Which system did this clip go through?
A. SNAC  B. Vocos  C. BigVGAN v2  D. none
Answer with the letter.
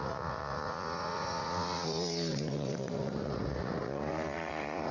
B